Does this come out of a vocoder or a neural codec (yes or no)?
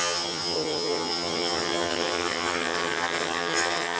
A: yes